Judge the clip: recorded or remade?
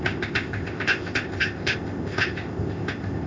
remade